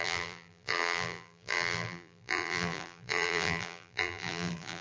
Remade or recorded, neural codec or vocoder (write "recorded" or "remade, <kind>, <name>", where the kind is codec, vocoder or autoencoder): remade, vocoder, BigVGAN v2